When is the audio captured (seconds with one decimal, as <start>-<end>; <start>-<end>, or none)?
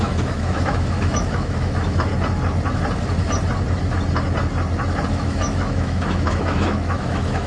2.1-5.1